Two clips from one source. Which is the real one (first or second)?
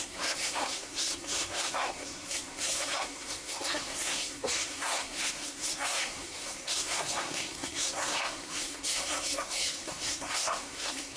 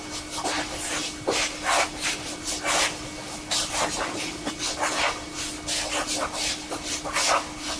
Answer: second